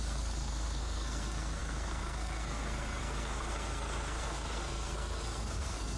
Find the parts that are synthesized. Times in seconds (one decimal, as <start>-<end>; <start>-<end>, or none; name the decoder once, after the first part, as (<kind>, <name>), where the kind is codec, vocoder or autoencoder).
0.0-6.0 (codec, SNAC)